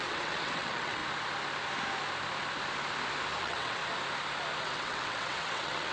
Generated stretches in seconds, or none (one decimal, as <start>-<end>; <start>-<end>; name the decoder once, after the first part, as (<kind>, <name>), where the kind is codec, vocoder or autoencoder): 0.0-1.0 (vocoder, WaveNeXt); 3.4-3.8; 4.6-5.9